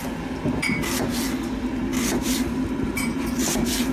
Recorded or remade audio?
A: recorded